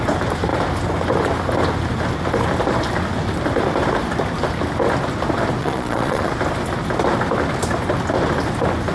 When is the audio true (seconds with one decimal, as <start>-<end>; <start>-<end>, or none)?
0.0-5.6; 6.3-8.9